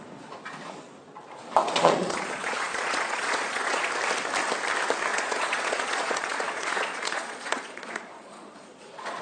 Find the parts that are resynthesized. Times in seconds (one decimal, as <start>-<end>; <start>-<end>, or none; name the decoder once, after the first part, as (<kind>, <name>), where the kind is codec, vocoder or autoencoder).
1.6-3.9 (vocoder, Vocos); 5.1-9.2